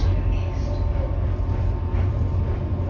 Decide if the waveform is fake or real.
real